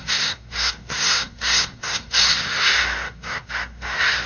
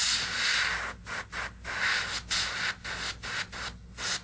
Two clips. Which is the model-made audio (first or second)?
first